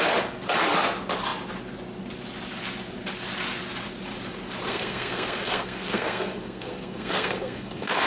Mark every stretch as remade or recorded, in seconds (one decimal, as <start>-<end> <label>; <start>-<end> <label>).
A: 0.0-4.7 recorded; 4.7-8.1 remade